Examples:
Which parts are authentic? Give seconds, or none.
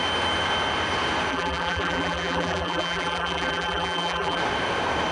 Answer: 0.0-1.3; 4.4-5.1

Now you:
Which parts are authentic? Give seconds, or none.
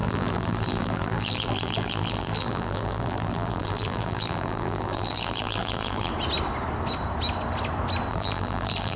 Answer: 6.1-8.1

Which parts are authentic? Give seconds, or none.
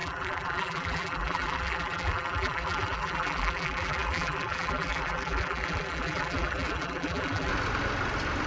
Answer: 7.5-8.5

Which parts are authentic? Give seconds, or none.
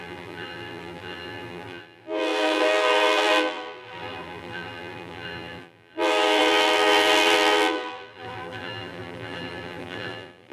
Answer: none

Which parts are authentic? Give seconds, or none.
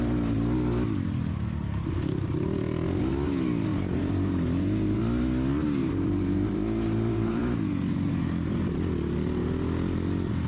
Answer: 0.0-3.7; 5.0-5.8; 8.7-10.5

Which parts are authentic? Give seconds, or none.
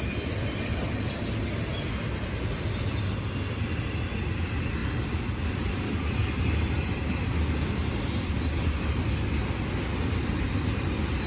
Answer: 0.0-4.8; 5.8-11.3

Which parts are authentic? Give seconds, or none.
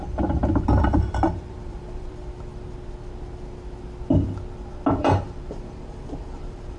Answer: 2.5-4.9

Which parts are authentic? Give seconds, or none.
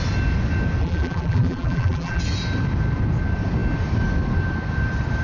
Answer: 0.0-0.8; 2.2-5.2